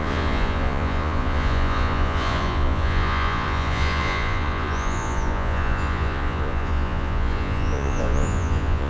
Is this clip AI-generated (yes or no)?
yes